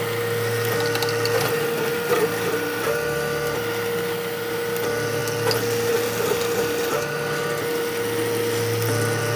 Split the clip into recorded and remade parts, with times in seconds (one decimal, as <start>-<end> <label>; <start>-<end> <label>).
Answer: 0.0-9.4 recorded